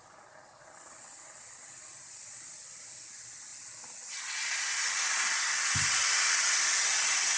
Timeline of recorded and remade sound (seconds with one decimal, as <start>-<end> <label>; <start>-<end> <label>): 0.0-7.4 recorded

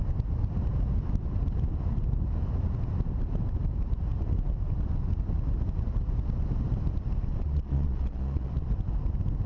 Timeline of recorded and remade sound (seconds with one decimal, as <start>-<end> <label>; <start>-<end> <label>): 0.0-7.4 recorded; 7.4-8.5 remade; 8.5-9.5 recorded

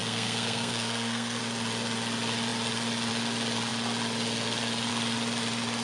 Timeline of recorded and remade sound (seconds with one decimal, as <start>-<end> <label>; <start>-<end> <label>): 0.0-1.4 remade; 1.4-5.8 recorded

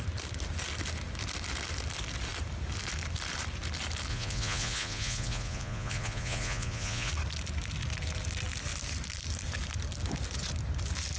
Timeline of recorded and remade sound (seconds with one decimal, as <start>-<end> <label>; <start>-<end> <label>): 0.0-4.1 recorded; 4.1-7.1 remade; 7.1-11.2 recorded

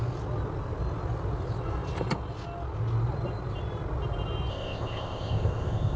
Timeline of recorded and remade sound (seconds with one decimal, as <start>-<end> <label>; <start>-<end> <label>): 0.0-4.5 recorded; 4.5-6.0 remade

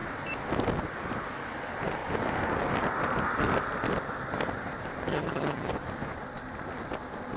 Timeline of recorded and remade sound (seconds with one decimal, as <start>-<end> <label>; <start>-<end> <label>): 0.0-5.1 recorded; 5.1-5.7 remade; 5.7-7.4 recorded

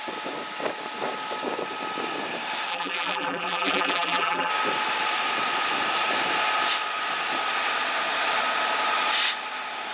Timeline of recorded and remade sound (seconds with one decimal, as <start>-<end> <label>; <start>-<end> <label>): 0.0-2.7 recorded; 2.7-4.5 remade; 4.5-9.9 recorded